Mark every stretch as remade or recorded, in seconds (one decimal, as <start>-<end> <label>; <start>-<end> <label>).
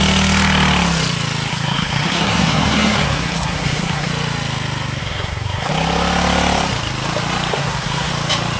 0.0-1.5 recorded; 1.5-4.1 remade; 4.1-5.0 recorded; 5.0-5.7 remade; 5.7-7.5 recorded; 7.5-8.1 remade; 8.1-8.6 recorded